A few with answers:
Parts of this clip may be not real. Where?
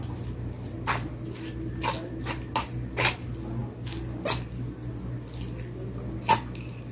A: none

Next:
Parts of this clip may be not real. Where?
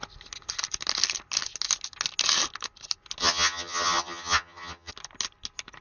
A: 3.2-4.9 (vocoder, HiFi-GAN)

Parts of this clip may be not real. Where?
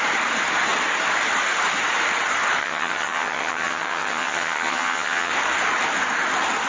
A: 2.6-5.3 (vocoder, HiFi-GAN)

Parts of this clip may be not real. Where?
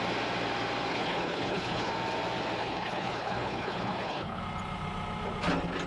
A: 0.9-1.9 (codec, HILCodec); 2.6-4.4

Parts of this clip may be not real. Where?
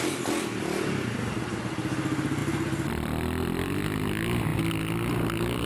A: none